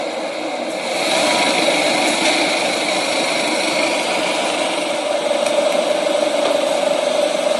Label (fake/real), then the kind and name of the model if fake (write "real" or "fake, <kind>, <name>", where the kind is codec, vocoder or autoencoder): real